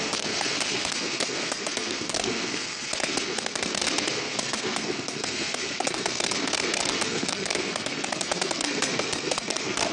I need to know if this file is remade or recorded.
remade